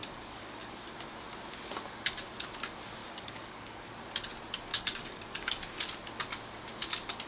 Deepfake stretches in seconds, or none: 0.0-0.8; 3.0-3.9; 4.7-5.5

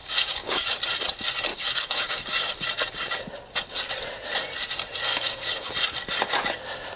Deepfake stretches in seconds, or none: 0.0-0.8; 1.5-2.5; 5.1-5.7

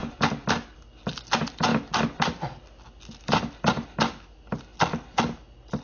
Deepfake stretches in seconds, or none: none